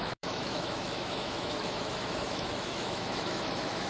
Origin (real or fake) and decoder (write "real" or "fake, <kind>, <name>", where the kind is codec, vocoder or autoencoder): fake, autoencoder, DAC-VAE